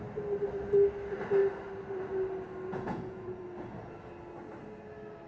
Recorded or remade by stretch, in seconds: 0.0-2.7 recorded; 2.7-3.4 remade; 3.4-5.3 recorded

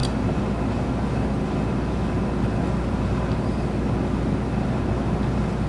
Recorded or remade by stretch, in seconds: 0.0-5.7 recorded

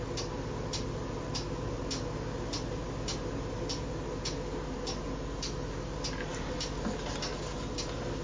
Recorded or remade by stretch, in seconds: 0.0-8.2 recorded

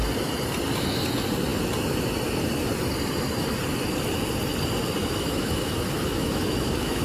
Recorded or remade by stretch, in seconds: 0.0-5.0 recorded; 5.0-7.0 remade